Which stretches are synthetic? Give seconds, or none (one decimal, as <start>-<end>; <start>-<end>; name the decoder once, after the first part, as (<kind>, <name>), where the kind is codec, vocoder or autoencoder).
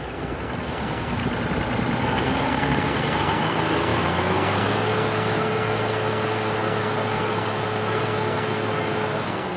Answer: 0.0-1.2 (codec, SNAC); 2.0-9.6